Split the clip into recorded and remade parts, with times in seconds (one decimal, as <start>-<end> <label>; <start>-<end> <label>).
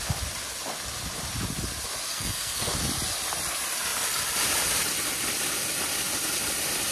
0.0-2.1 recorded; 2.1-2.7 remade; 2.7-6.9 recorded